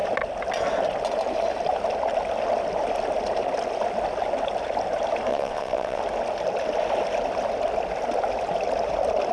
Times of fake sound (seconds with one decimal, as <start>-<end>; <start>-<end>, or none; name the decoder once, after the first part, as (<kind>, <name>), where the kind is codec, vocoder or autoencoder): 5.3-6.0 (vocoder, WaveNeXt)

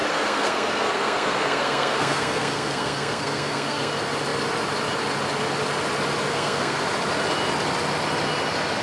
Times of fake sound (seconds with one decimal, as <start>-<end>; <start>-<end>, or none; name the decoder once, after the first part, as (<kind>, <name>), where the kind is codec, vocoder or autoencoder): 0.0-3.9 (codec, SNAC); 6.3-6.8

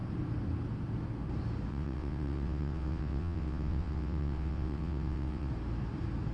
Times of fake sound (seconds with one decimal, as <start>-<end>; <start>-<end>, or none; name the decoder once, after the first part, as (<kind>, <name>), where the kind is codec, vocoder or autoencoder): 1.7-5.5 (vocoder, WaveNeXt)

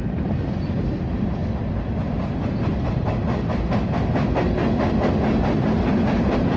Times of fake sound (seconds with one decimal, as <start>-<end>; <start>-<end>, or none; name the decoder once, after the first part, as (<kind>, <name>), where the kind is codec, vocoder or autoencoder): none